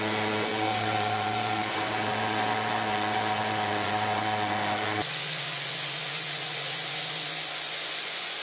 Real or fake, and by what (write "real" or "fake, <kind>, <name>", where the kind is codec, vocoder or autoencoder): fake, vocoder, Vocos